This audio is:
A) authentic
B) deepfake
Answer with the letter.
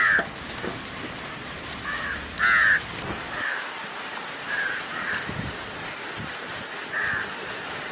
A